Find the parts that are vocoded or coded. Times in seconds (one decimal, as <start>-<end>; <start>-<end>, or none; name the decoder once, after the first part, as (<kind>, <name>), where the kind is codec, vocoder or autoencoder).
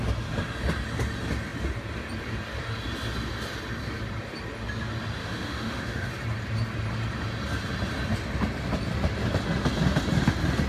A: 5.2-6.1 (autoencoder, DAC-VAE)